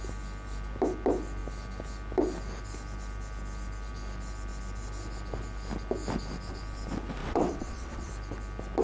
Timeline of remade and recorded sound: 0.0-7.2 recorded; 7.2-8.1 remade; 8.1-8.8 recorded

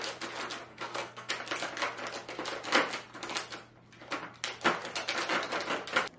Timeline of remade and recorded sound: 0.0-0.7 recorded; 0.7-1.3 remade; 1.3-6.2 recorded

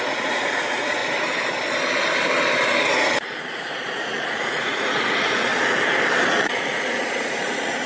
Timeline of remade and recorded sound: 0.0-1.0 remade; 1.0-3.5 recorded; 3.5-5.5 remade; 5.5-6.3 recorded; 6.3-7.9 remade

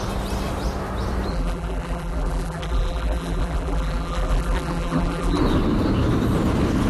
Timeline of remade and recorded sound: 0.0-1.3 recorded; 1.3-5.4 remade; 5.4-6.9 recorded

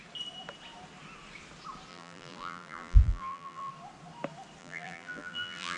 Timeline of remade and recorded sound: 0.0-1.9 recorded; 1.9-3.7 remade; 3.7-4.6 recorded; 4.6-5.8 remade

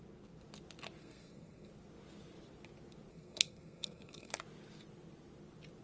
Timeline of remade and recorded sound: 0.0-1.0 recorded; 1.0-1.7 remade; 1.7-3.1 recorded; 3.1-4.3 remade; 4.3-5.8 recorded

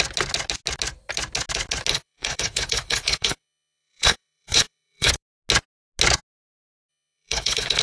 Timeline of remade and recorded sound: 0.0-1.9 recorded; 1.9-5.1 remade; 5.1-6.9 recorded; 6.9-7.8 remade